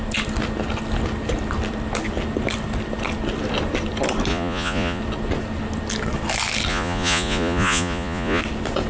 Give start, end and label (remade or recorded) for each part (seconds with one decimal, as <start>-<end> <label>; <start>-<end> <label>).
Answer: 0.0-4.3 recorded; 4.3-5.0 remade; 5.0-6.7 recorded; 6.7-8.4 remade; 8.4-8.9 recorded